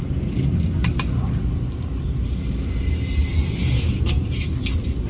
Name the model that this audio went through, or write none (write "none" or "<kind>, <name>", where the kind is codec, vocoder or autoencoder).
none